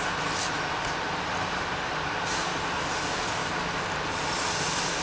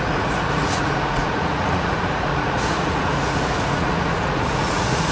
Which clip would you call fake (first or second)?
second